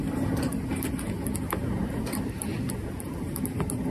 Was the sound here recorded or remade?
recorded